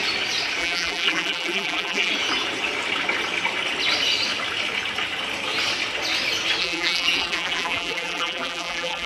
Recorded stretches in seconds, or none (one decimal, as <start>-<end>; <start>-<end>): 0.0-0.6; 2.1-6.6